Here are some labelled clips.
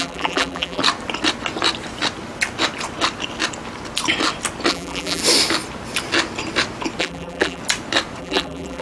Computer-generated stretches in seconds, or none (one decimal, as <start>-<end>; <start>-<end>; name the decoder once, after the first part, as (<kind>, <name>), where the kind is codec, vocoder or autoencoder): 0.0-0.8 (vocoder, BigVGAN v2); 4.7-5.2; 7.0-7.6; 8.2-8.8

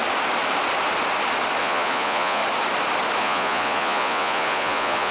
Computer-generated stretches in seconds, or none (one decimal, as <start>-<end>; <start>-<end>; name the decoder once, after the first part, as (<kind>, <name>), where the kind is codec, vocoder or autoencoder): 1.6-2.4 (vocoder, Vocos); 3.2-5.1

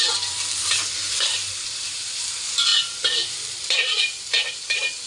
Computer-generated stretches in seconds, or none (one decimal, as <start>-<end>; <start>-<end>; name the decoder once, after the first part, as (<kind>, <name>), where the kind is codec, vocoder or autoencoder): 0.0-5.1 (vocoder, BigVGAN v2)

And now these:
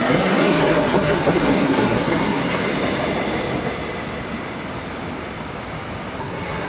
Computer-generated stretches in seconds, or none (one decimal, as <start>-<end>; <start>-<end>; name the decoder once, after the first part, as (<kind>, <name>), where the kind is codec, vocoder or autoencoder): 0.0-2.7 (codec, SNAC); 6.2-6.7

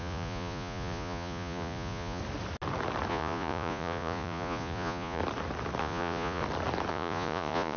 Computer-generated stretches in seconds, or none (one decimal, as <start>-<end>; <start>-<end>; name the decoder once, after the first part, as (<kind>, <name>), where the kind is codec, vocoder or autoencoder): 0.0-2.2 (vocoder, Vocos); 3.1-5.2; 5.8-6.4; 6.9-7.8